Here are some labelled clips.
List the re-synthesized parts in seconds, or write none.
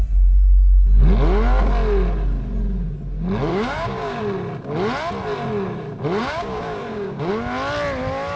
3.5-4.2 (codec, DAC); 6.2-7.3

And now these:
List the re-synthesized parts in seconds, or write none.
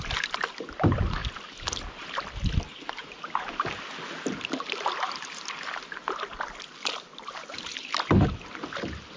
none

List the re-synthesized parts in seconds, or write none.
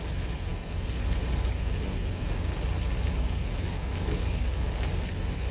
3.9-4.9 (codec, DAC)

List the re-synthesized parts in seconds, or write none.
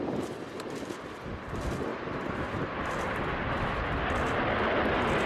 1.9-2.9 (vocoder, BigVGAN v2)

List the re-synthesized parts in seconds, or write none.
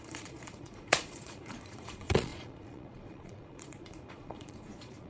0.0-5.1 (vocoder, Vocos)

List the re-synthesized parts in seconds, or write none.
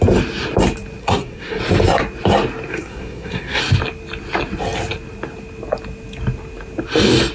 1.0-1.6 (codec, SNAC); 2.7-3.6